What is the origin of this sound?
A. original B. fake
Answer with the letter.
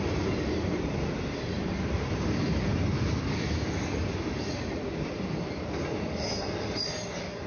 A